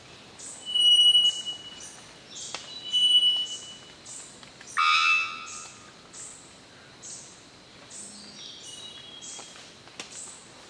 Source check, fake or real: real